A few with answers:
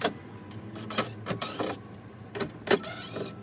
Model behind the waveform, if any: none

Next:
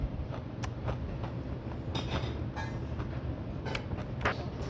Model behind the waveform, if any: none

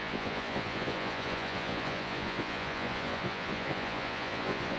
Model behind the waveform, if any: vocoder, Vocos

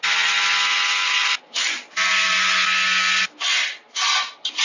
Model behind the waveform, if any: none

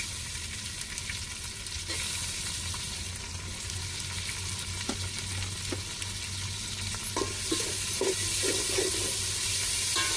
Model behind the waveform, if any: none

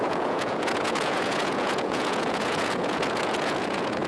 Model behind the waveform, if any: vocoder, Vocos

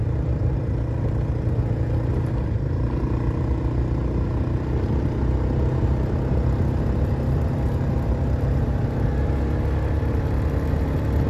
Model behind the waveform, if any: none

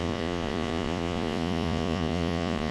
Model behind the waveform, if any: vocoder, Vocos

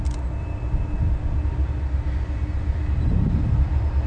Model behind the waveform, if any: none